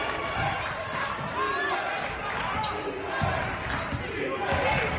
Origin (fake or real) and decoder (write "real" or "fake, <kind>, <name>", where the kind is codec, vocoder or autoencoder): real